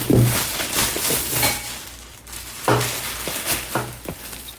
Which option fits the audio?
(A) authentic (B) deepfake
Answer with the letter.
A